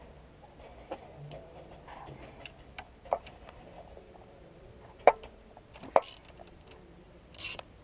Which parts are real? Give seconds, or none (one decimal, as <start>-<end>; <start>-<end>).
0.0-0.7; 5.4-6.2